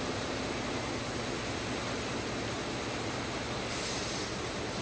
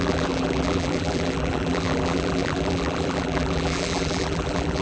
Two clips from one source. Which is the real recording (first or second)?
first